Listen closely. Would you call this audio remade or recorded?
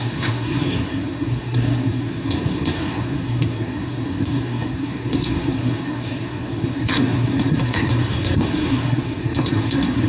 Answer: remade